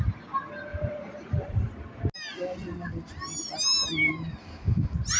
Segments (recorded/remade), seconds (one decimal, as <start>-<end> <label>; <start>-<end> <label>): 0.0-0.7 recorded; 0.7-2.0 remade; 2.0-5.2 recorded

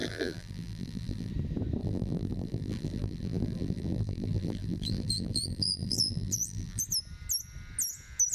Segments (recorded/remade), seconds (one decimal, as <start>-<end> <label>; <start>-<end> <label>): 0.0-1.3 remade; 1.3-1.8 recorded; 1.8-6.8 remade; 6.8-8.3 recorded

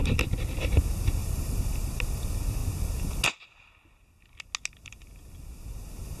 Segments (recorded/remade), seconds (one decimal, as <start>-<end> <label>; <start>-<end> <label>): 0.0-1.2 recorded; 1.2-1.8 remade; 1.8-6.2 recorded

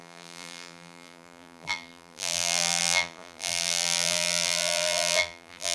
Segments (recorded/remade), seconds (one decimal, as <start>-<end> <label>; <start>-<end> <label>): 0.0-5.7 remade

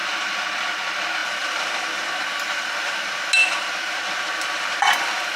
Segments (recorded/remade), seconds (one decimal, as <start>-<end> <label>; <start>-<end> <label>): 0.0-1.2 recorded; 1.2-2.1 remade; 2.1-3.4 recorded; 3.4-5.4 remade

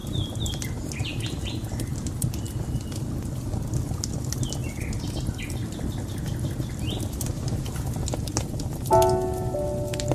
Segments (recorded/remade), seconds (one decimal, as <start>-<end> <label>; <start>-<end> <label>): 0.0-0.7 remade; 0.7-10.1 recorded